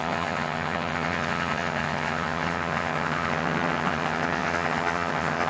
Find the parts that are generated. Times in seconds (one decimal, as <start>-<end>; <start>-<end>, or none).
0.0-5.5